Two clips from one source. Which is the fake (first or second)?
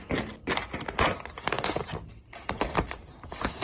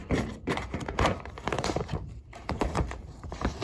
second